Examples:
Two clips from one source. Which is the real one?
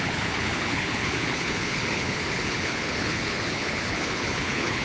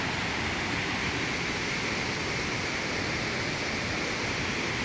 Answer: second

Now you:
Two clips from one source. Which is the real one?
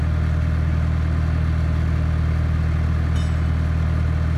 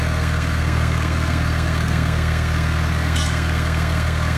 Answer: first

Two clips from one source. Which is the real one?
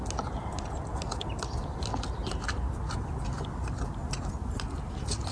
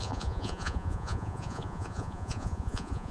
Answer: first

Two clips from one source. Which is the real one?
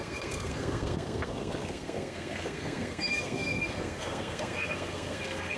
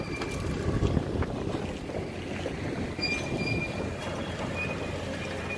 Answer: second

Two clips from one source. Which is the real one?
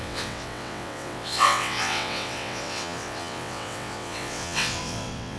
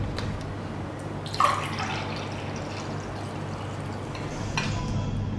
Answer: second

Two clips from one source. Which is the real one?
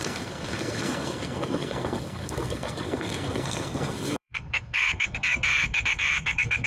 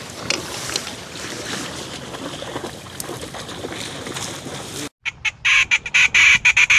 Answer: second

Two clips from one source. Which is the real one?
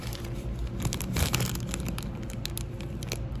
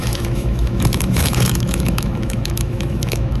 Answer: first